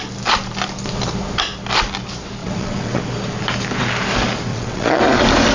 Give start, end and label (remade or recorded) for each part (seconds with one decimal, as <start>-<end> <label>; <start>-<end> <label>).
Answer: 0.0-2.4 recorded; 2.4-3.0 remade; 3.0-4.5 recorded; 4.5-5.0 remade; 5.0-5.5 recorded